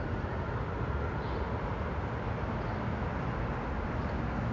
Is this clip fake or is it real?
real